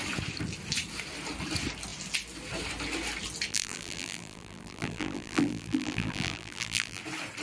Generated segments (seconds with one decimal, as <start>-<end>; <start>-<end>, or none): 3.5-7.0